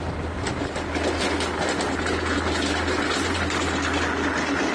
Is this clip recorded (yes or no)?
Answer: yes